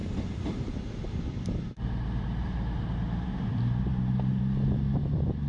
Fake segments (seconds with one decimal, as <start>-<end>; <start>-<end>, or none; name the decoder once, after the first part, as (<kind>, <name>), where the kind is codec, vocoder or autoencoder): 0.0-5.5 (vocoder, BigVGAN v2)